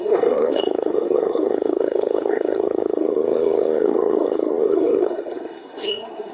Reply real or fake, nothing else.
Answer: fake